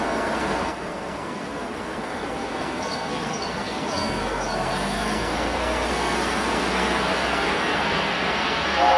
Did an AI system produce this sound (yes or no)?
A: yes